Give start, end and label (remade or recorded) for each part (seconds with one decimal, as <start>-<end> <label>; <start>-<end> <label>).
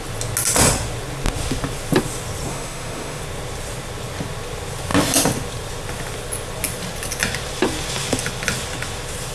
0.0-2.5 recorded; 2.5-3.2 remade; 3.2-9.3 recorded